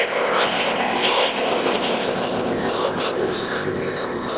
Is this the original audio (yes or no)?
no